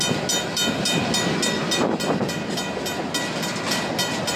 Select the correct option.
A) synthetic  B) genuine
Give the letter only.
B